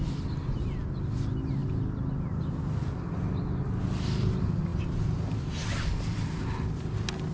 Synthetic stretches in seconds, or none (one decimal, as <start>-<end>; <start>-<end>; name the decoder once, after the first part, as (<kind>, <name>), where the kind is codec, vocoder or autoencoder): none